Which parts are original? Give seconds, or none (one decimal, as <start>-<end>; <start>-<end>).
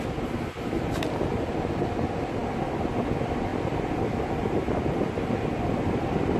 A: 0.0-6.4